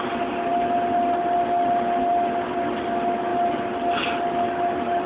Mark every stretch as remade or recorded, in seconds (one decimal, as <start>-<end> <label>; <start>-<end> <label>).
0.0-5.1 recorded